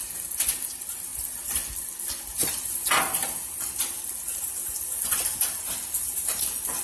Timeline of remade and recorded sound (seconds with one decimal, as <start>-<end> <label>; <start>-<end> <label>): 0.0-6.8 recorded